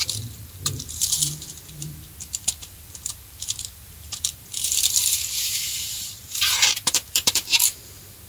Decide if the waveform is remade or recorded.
remade